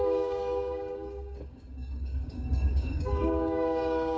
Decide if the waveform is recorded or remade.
remade